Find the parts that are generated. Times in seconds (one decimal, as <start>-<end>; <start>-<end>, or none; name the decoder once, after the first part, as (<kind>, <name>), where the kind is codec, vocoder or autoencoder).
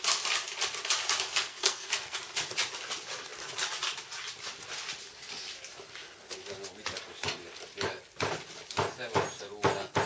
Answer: 1.5-2.2 (codec, SNAC)